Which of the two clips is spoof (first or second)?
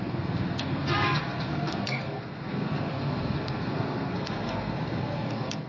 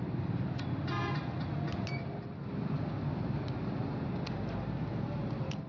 first